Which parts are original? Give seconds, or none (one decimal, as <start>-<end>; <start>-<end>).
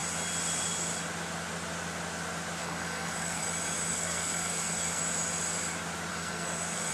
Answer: 0.0-2.6; 3.4-3.9; 5.0-6.1